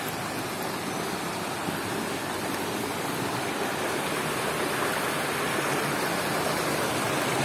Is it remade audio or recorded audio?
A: recorded